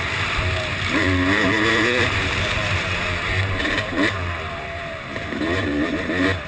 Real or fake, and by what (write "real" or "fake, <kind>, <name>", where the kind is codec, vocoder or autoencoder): fake, vocoder, BigVGAN v2